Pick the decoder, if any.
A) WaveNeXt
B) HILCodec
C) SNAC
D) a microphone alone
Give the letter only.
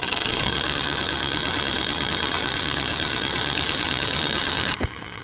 A